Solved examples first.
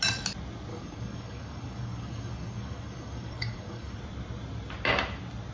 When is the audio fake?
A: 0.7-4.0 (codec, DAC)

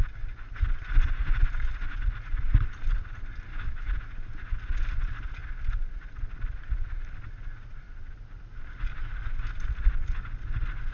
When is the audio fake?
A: 3.5-4.1 (autoencoder, DAC-VAE)